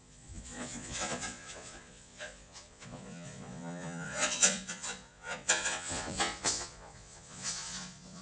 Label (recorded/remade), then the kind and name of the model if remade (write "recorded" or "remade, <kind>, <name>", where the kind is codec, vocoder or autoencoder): remade, vocoder, Vocos